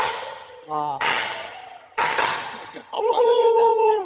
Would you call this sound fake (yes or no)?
yes